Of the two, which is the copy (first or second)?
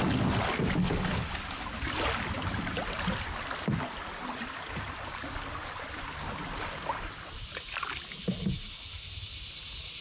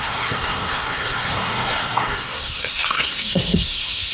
second